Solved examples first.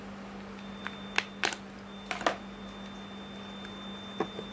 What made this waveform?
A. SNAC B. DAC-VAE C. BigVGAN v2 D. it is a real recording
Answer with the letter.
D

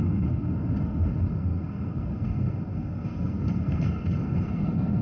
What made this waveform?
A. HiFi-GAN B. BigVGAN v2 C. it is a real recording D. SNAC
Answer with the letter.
D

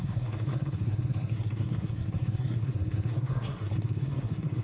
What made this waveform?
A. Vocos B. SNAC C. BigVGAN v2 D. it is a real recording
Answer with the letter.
B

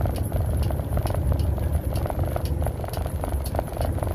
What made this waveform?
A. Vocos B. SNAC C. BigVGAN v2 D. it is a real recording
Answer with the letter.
D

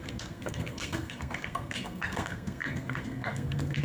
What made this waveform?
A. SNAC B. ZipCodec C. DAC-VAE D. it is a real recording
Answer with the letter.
A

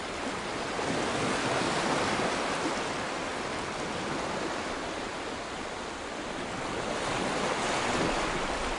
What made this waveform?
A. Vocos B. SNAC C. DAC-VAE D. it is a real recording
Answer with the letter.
D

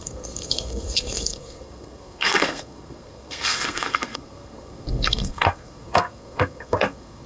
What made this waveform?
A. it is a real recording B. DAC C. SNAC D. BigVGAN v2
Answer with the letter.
C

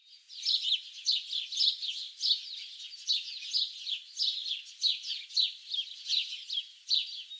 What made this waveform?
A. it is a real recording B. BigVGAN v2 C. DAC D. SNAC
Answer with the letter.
A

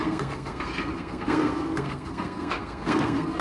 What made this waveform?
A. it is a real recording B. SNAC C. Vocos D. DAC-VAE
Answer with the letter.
B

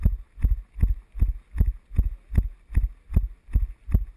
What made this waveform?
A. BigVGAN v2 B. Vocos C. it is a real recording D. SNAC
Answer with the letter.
C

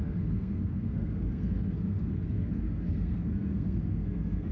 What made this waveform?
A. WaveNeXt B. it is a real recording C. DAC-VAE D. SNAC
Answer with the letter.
D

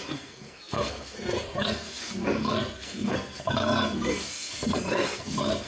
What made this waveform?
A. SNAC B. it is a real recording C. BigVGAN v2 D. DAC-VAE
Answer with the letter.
A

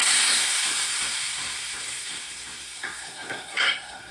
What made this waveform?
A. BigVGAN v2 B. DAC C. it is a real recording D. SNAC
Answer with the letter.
D